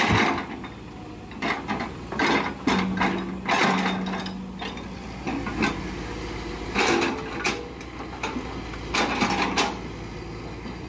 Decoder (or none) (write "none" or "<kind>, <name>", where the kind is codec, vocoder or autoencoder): none